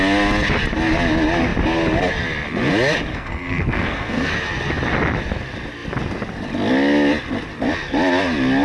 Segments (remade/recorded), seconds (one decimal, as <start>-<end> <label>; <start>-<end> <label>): 0.0-3.1 recorded; 3.1-4.3 remade; 4.3-8.6 recorded